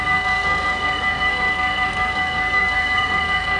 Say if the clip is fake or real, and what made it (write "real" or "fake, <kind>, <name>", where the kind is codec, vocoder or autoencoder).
fake, codec, SNAC